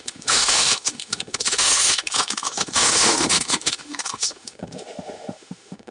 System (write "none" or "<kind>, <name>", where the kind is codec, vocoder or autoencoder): autoencoder, DAC-VAE